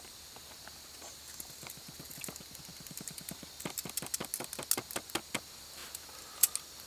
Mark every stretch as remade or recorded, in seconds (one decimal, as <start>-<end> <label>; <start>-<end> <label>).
0.0-6.9 recorded